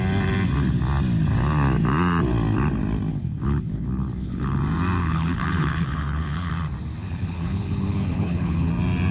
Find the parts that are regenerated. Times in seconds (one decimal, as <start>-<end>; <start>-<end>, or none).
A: 3.1-4.6; 5.0-6.5; 7.0-8.7